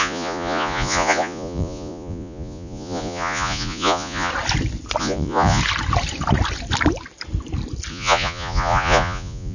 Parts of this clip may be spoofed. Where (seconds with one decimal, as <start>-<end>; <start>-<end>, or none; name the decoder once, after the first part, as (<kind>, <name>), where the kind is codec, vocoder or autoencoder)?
0.0-4.3 (vocoder, Vocos); 5.0-5.6; 7.9-9.5